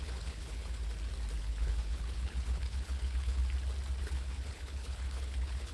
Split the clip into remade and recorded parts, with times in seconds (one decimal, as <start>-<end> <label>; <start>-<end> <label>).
0.0-0.8 remade; 0.8-1.4 recorded; 1.4-3.4 remade; 3.4-4.0 recorded; 4.0-5.7 remade